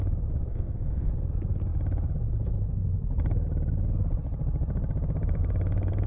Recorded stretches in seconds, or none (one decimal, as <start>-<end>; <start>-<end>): 0.0-0.5; 1.1-6.1